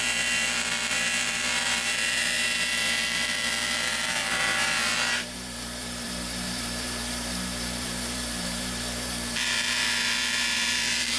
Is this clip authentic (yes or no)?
no